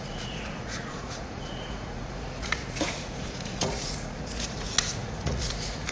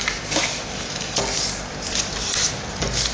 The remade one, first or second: first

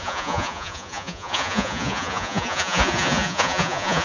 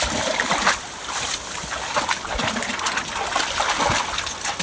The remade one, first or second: first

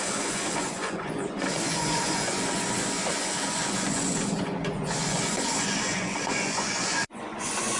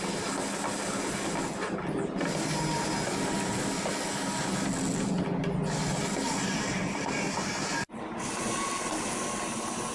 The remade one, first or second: first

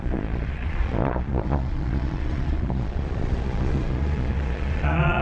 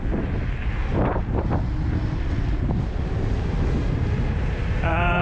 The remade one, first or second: first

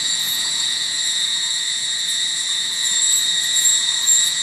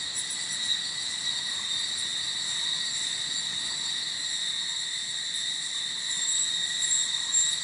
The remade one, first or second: first